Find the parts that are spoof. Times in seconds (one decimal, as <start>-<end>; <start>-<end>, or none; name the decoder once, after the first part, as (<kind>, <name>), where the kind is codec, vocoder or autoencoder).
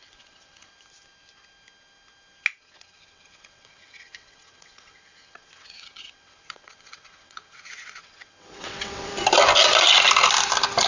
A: 0.0-0.7 (vocoder, WaveNeXt); 2.6-9.1